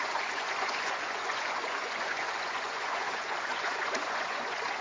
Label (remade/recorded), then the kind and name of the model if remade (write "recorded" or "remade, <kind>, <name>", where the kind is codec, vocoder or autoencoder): remade, vocoder, Vocos